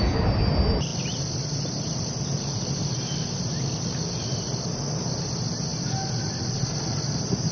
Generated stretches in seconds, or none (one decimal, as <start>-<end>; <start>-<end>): none